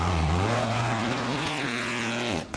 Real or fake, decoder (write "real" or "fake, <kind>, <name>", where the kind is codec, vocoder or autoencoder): fake, vocoder, Vocos